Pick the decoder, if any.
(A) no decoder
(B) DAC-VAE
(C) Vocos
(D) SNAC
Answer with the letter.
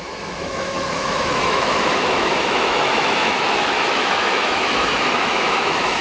B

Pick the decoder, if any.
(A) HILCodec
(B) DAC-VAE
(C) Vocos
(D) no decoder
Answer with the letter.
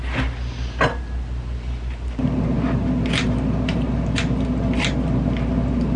D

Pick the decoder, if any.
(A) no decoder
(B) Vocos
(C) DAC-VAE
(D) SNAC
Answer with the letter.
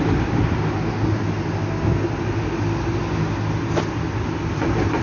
A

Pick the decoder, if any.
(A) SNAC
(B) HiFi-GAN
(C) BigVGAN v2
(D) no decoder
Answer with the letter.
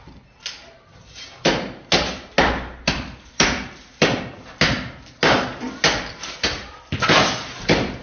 D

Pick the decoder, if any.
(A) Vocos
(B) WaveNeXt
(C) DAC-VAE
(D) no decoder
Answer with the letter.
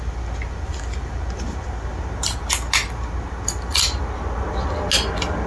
D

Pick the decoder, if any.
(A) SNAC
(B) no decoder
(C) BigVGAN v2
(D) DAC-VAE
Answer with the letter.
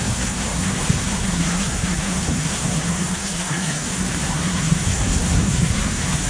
A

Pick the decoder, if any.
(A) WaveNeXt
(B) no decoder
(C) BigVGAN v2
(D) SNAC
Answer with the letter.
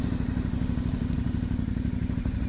B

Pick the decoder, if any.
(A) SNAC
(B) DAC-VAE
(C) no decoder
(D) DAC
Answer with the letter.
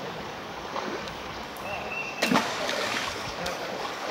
D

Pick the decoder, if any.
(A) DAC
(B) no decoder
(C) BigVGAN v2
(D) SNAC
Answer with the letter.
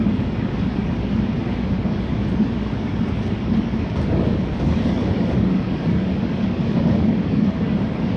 A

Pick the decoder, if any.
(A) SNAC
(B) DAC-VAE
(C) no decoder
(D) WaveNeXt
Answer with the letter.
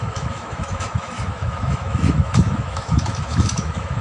B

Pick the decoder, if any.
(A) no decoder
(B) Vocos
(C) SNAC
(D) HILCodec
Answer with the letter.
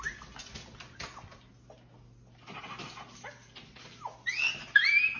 A